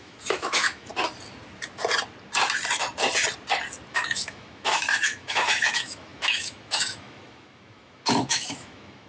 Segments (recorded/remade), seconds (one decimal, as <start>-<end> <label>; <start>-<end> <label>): 0.0-0.9 remade; 0.9-3.9 recorded; 3.9-9.1 remade